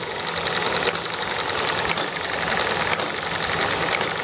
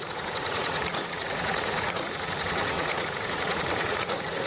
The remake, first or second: second